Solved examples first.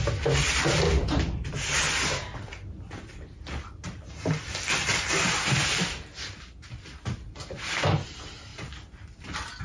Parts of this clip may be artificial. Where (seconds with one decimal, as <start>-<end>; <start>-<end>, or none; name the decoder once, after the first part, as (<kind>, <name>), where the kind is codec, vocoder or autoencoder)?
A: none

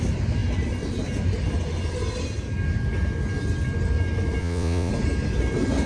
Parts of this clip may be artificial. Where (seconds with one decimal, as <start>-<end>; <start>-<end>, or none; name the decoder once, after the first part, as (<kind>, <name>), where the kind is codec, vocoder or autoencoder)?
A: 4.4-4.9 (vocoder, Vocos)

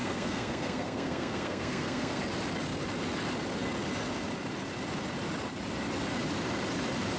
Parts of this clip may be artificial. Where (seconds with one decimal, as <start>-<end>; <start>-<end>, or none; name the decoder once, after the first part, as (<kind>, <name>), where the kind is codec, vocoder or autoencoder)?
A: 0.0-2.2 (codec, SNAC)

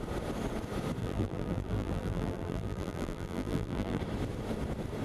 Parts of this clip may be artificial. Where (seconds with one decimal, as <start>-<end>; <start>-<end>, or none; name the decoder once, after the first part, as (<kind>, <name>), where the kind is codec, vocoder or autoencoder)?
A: 1.0-4.0 (vocoder, BigVGAN v2)

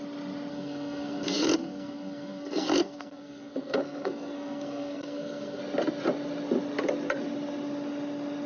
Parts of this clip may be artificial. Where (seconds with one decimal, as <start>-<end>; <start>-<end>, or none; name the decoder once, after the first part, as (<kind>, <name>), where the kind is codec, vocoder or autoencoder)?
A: 0.5-5.6 (codec, SNAC)

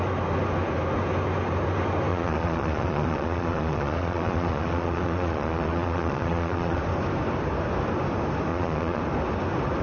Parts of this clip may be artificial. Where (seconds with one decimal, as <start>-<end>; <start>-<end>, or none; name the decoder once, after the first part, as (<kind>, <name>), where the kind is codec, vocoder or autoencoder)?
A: 2.1-6.8 (vocoder, Vocos); 8.5-9.0

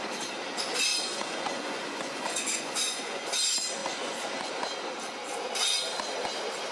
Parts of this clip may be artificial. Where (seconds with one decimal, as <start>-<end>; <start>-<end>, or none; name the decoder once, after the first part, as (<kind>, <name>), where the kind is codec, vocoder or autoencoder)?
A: 0.9-3.3 (vocoder, Vocos); 3.8-4.5